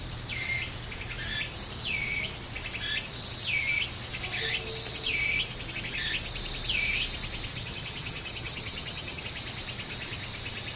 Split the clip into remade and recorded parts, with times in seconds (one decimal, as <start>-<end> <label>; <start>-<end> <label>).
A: 0.0-7.5 recorded; 7.5-9.2 remade; 9.2-10.8 recorded